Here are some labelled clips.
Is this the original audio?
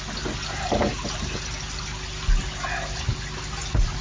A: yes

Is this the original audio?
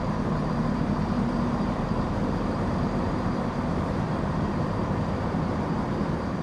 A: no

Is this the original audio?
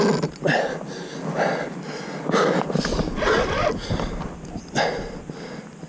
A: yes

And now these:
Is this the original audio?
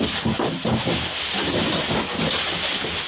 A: yes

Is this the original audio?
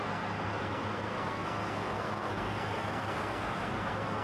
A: no